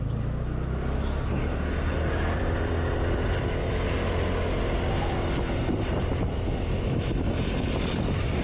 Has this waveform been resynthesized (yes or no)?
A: no